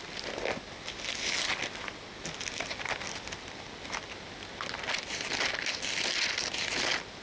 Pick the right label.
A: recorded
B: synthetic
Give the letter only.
A